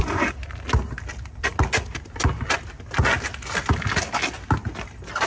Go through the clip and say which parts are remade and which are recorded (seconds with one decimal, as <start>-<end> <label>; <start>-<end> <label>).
0.0-5.3 recorded